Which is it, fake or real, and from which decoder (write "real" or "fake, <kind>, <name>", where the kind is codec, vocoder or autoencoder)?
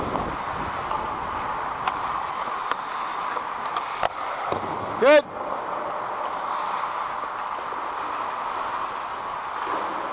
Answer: real